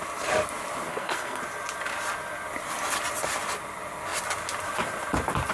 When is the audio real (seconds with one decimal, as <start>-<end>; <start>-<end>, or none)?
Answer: 0.0-0.9; 1.4-5.5